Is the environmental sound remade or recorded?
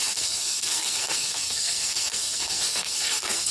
remade